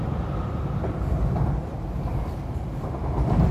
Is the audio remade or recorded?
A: recorded